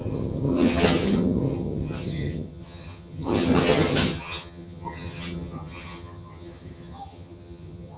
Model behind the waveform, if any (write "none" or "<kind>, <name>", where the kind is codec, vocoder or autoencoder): vocoder, HiFi-GAN